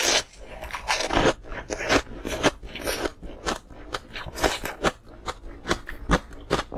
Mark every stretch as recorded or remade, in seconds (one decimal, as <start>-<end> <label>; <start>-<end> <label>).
0.0-1.5 recorded; 1.5-2.5 remade; 2.5-3.1 recorded; 3.1-4.4 remade; 4.4-6.8 recorded